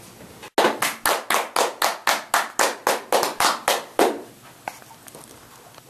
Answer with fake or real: real